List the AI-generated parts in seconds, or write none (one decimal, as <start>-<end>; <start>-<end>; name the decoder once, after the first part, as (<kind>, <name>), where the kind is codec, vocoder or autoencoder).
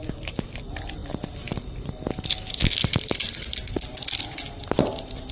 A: none